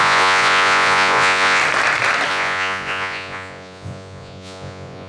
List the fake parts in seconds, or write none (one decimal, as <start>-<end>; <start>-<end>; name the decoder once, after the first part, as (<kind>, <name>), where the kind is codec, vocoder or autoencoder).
0.0-1.6 (vocoder, Vocos); 2.3-5.1